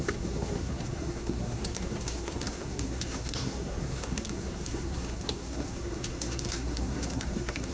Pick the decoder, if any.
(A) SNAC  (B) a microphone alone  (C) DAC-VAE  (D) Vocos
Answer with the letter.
A